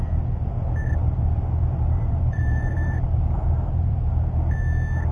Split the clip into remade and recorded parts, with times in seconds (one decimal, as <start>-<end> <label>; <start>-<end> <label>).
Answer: 0.0-1.0 recorded; 1.0-4.1 remade; 4.1-5.1 recorded